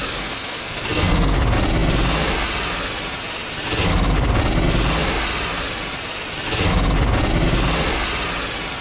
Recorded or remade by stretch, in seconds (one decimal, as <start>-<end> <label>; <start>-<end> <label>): 0.0-1.4 remade; 1.4-8.8 recorded